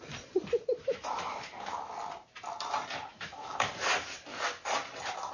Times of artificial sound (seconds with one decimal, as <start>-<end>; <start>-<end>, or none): 0.8-1.9; 3.1-3.7